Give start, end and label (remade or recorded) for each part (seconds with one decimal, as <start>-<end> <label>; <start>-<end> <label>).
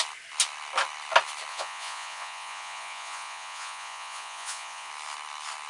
0.0-1.5 recorded; 1.5-4.9 remade; 4.9-5.7 recorded